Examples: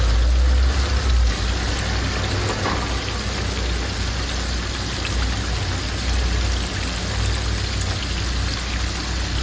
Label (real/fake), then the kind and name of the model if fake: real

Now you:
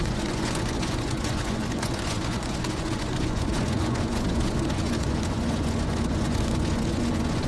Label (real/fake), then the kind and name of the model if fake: fake, vocoder, Vocos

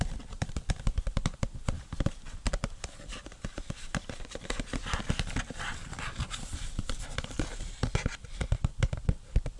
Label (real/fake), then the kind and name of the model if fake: fake, vocoder, BigVGAN v2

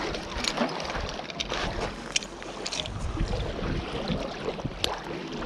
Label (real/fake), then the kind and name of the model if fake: real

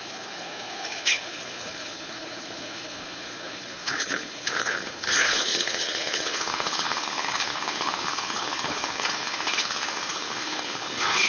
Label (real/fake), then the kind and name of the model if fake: fake, codec, HILCodec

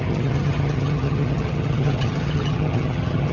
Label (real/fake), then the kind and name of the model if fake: fake, vocoder, HiFi-GAN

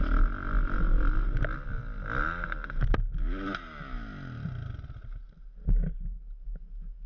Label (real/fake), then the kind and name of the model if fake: real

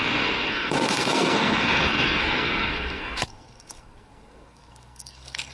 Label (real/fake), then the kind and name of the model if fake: fake, codec, SNAC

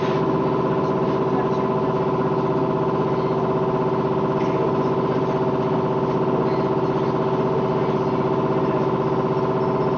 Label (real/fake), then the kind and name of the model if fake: real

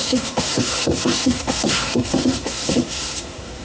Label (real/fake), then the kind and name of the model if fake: fake, codec, SNAC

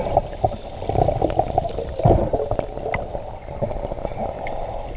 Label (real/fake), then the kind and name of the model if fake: real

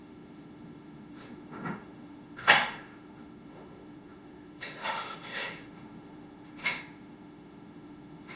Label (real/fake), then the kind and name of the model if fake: fake, autoencoder, DAC-VAE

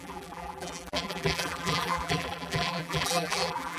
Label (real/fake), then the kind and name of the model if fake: fake, vocoder, BigVGAN v2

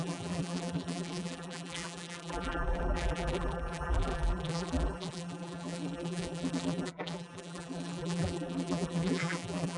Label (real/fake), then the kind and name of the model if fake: fake, vocoder, BigVGAN v2